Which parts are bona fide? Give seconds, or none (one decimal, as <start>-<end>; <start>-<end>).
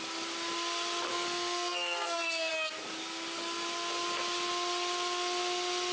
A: 0.0-1.1; 2.5-5.9